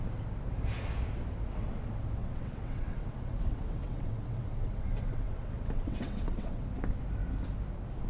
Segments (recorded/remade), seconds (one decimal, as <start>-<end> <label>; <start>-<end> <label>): 0.0-2.2 recorded; 2.2-6.7 remade; 6.7-8.1 recorded

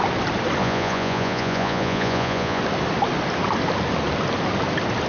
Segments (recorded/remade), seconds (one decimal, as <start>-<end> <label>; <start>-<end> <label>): 0.0-0.6 recorded; 0.6-2.6 remade; 2.6-5.1 recorded